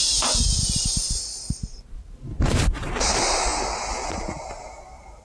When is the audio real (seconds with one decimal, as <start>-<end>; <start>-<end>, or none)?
3.1-5.2